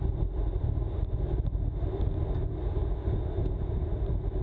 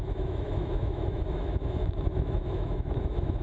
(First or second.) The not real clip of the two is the second